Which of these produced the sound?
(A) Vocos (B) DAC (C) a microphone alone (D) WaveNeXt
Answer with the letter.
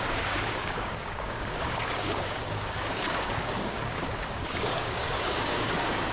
B